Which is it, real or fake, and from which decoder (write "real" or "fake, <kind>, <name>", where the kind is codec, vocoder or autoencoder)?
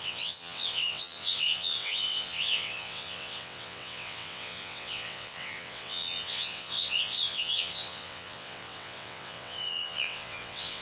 fake, vocoder, WaveNeXt